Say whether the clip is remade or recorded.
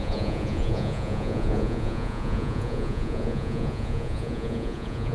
remade